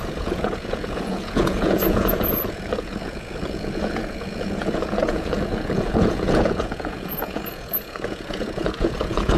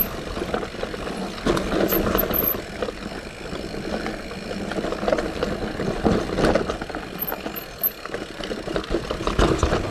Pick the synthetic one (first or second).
first